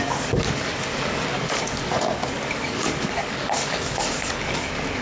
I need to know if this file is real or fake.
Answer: fake